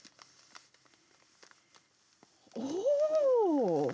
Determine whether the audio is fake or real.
real